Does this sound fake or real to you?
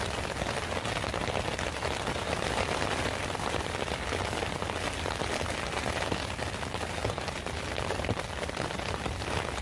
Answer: real